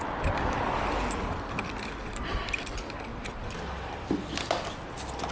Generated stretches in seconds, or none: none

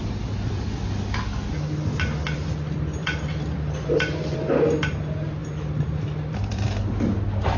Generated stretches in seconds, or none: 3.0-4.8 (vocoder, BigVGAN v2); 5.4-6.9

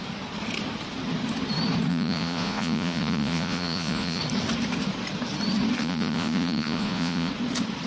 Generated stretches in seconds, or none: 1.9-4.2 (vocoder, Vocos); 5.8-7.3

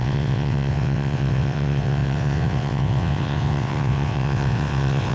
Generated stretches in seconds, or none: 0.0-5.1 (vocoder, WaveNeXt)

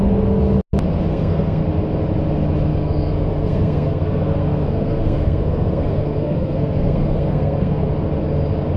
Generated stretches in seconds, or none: 1.1-1.6 (codec, SNAC); 2.7-7.9